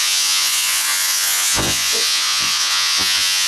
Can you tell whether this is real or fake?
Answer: fake